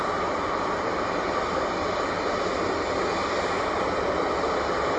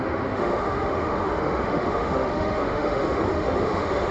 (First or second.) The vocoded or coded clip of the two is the second